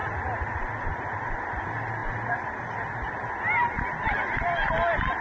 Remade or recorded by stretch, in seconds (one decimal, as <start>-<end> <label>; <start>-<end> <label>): 0.0-5.2 recorded